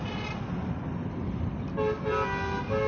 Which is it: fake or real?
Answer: real